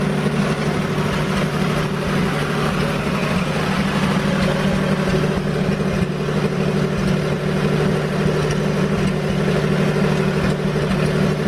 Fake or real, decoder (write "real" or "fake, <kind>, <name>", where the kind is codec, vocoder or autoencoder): real